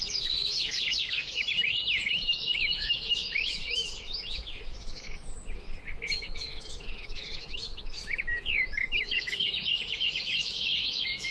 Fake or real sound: fake